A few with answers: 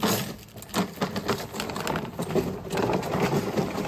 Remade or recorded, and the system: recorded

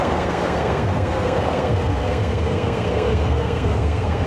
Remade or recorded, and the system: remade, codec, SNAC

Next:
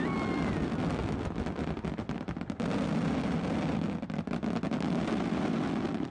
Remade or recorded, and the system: recorded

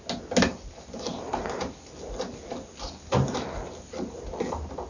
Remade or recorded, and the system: recorded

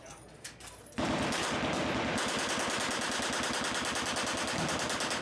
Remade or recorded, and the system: recorded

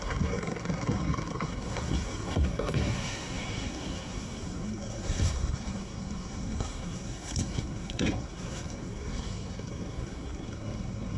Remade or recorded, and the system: remade, codec, SNAC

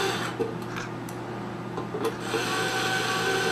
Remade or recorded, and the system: recorded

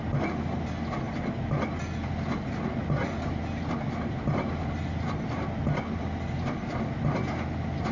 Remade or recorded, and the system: recorded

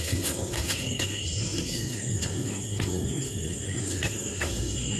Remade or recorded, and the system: remade, codec, SNAC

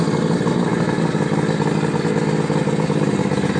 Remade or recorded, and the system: recorded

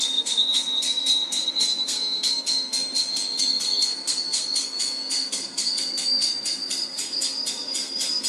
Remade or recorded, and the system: remade, codec, SNAC